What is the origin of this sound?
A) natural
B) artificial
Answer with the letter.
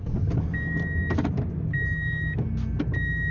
A